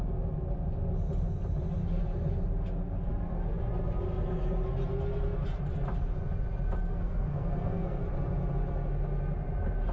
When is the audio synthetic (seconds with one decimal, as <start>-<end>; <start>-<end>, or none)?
6.9-8.0

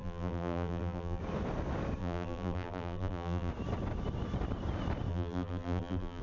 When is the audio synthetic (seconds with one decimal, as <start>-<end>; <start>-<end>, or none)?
0.0-1.2; 2.0-3.5; 5.1-6.2

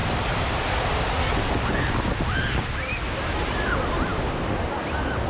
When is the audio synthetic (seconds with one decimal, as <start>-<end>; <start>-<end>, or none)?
none

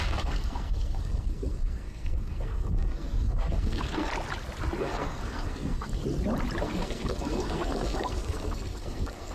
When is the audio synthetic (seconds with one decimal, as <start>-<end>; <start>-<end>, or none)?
0.0-4.1; 4.8-6.0; 6.6-9.3

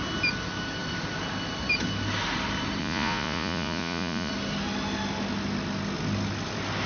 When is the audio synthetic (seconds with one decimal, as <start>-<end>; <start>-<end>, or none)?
2.8-4.3

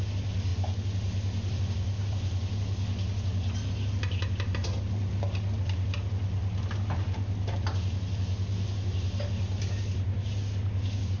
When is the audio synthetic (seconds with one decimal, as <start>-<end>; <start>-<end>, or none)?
none

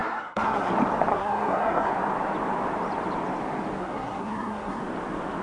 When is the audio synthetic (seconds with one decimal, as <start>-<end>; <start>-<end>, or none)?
0.0-0.7; 1.1-1.9; 3.8-4.8

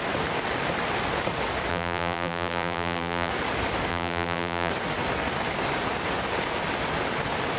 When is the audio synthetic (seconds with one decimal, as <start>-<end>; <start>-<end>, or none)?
1.7-3.3; 3.9-4.7